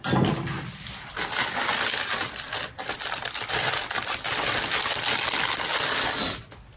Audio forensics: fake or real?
real